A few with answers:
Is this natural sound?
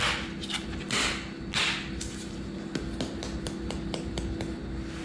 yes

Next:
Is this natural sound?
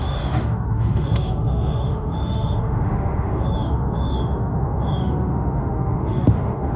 no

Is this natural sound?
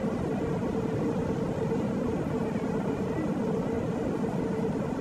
yes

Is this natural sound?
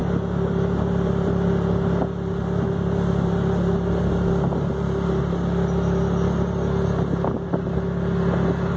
yes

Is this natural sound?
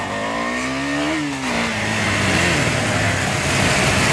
yes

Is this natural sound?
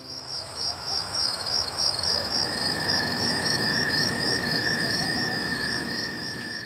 no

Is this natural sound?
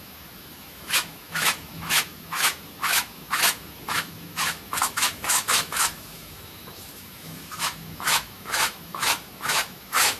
no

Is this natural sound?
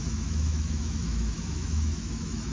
no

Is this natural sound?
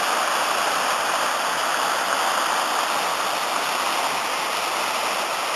yes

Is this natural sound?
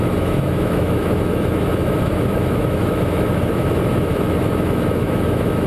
no